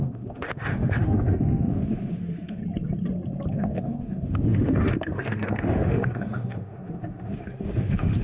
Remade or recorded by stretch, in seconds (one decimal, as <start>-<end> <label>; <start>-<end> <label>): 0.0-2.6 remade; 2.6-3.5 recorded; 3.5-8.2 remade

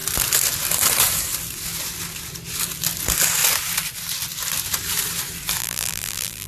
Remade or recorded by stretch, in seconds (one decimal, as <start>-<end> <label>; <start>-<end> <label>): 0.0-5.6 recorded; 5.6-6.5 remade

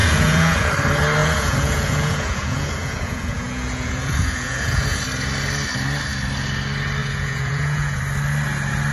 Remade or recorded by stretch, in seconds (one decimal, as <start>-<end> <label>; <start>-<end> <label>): 0.0-0.7 remade; 0.7-1.2 recorded; 1.2-5.0 remade; 5.0-7.0 recorded; 7.0-8.0 remade; 8.0-8.9 recorded

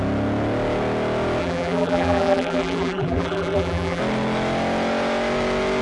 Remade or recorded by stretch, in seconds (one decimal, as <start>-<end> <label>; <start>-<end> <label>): 0.0-1.4 recorded; 1.4-4.0 remade; 4.0-5.8 recorded

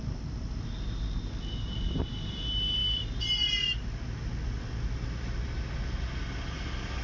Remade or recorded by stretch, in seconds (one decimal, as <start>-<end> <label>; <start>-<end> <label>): 0.0-7.0 recorded

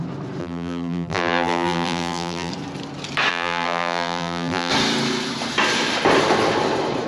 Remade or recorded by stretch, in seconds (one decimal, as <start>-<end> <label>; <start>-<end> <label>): 0.0-0.4 recorded; 0.4-2.5 remade; 2.5-3.3 recorded; 3.3-4.7 remade; 4.7-7.1 recorded

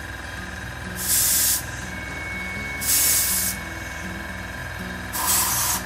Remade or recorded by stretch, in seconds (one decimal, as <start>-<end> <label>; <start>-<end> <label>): 0.0-5.9 recorded

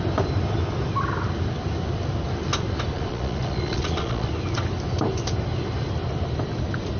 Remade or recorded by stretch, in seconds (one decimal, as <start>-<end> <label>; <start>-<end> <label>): 0.0-2.9 recorded; 2.9-4.3 remade; 4.3-7.0 recorded